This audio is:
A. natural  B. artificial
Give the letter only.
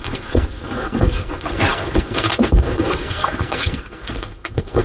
B